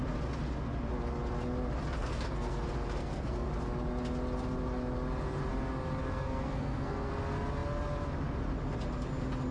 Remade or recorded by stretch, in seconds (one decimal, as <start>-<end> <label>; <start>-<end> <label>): 0.0-2.0 recorded; 2.0-2.6 remade; 2.6-3.0 recorded; 3.0-3.5 remade; 3.5-6.0 recorded; 6.0-7.1 remade; 7.1-9.5 recorded

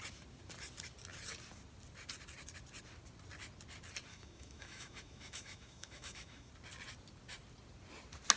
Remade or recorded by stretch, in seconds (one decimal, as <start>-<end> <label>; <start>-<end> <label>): 0.0-4.1 recorded; 4.1-6.5 remade; 6.5-8.4 recorded

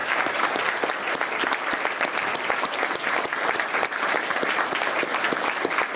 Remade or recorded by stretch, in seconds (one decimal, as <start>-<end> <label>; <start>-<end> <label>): 0.0-0.6 remade; 0.6-6.0 recorded

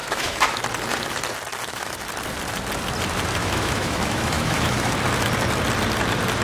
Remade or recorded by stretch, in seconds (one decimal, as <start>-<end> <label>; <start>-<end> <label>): 0.0-0.6 remade; 0.6-1.5 recorded; 1.5-2.1 remade; 2.1-3.4 recorded; 3.4-4.9 remade; 4.9-6.4 recorded

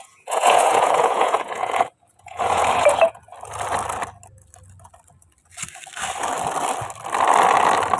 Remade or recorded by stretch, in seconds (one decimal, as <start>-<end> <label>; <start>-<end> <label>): 0.0-3.3 remade; 3.3-8.0 recorded

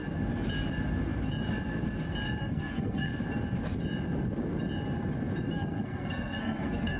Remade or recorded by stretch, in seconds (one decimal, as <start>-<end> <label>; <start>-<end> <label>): 0.0-2.4 recorded; 2.4-3.1 remade; 3.1-5.5 recorded; 5.5-7.0 remade